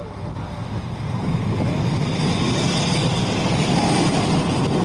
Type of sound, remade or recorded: recorded